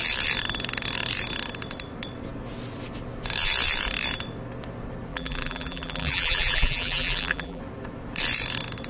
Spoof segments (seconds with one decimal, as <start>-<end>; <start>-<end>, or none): 5.1-7.6